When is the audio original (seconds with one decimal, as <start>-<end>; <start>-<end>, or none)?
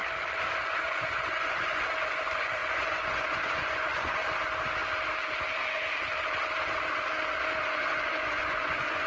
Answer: 0.0-0.7; 4.2-7.6